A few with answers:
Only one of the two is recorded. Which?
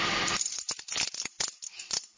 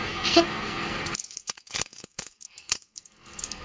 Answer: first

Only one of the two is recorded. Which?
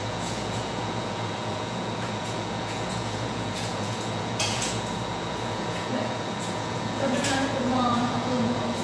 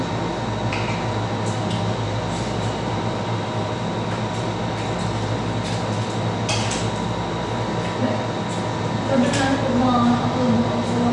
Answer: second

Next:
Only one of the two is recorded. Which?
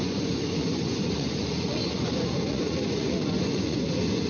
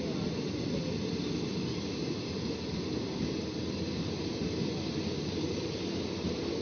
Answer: second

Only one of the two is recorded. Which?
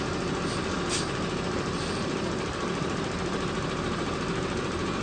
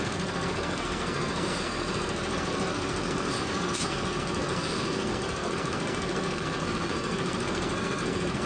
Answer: first